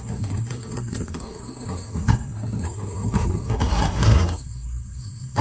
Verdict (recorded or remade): remade